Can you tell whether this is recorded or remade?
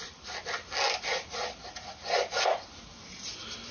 recorded